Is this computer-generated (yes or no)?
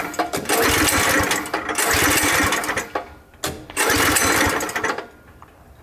no